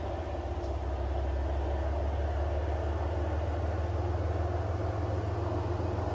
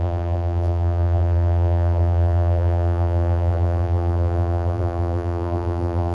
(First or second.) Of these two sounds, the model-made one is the second